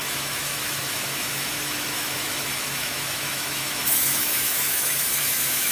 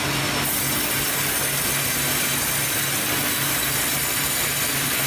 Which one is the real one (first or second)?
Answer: second